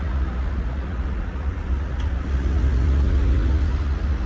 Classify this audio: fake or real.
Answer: fake